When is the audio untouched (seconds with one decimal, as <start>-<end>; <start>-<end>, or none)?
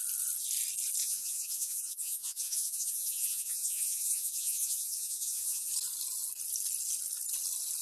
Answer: 0.0-1.0; 5.7-7.8